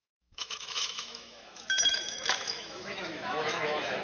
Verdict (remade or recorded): remade